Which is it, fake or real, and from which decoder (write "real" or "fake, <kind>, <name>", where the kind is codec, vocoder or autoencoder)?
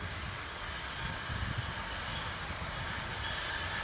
real